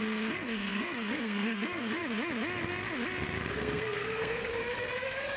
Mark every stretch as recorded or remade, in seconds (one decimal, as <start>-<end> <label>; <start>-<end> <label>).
0.0-2.0 remade; 2.0-3.5 recorded; 3.5-5.4 remade